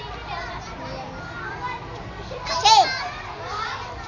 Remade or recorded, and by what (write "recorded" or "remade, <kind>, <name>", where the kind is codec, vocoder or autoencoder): recorded